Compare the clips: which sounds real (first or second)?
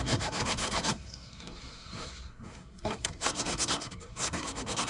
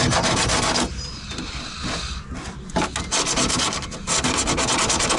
second